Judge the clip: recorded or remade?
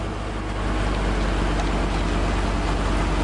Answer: recorded